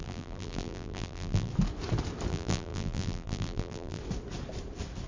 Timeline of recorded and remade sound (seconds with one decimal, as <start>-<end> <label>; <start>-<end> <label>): 0.0-1.5 remade; 1.5-2.3 recorded; 2.3-4.0 remade; 4.0-5.1 recorded